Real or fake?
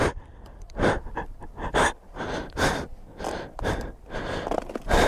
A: fake